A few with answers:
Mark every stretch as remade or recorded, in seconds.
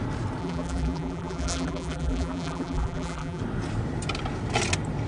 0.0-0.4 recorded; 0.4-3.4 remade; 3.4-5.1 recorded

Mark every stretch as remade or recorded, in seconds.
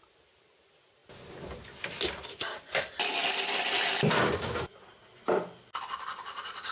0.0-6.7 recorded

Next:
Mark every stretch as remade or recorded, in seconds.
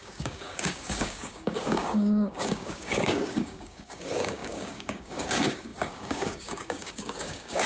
0.0-7.7 remade